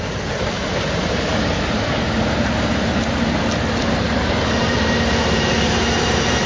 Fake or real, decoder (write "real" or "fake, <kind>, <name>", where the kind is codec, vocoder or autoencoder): fake, vocoder, BigVGAN v2